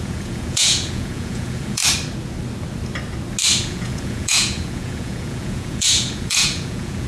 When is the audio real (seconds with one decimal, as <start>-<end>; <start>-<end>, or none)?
1.8-3.6